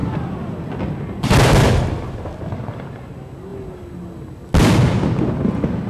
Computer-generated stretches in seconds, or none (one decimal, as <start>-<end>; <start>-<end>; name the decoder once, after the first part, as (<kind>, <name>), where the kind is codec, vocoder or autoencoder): none